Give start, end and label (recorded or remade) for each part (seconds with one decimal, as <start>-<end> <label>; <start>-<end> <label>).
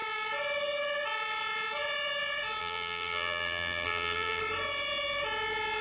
0.0-2.6 recorded; 2.6-4.4 remade; 4.4-5.8 recorded